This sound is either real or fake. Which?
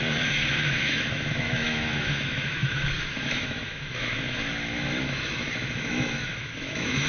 fake